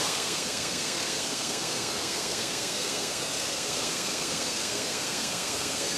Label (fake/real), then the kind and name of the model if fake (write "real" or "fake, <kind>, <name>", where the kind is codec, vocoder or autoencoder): fake, codec, SNAC